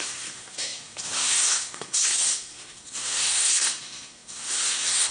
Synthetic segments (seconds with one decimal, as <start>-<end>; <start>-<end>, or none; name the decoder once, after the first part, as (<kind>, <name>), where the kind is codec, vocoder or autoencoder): 0.0-5.1 (codec, SNAC)